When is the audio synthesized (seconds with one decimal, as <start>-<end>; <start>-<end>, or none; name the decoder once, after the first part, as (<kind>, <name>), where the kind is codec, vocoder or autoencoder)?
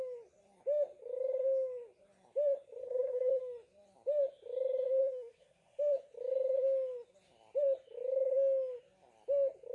2.8-3.4 (codec, SNAC); 5.0-5.8